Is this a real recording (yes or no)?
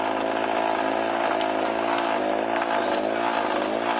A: yes